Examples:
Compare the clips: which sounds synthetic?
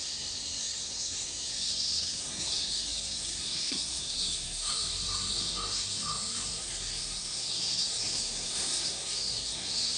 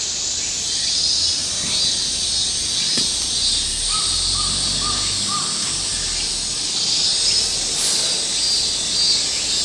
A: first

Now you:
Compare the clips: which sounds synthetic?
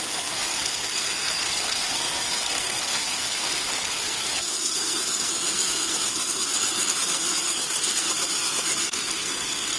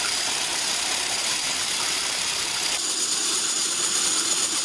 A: first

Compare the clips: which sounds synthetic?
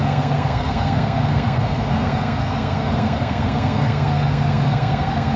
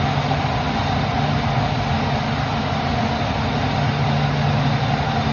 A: first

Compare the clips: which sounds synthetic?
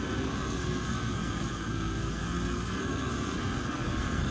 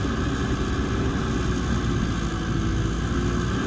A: first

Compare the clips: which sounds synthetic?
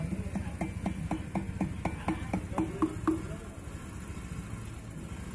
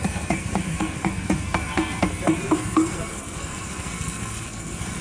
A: second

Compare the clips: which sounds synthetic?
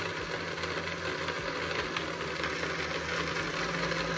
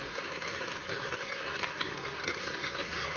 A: second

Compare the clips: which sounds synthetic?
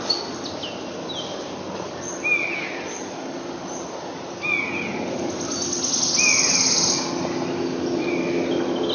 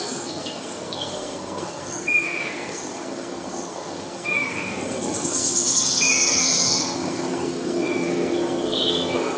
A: second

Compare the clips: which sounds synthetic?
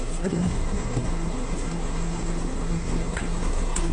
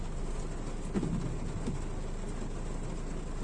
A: first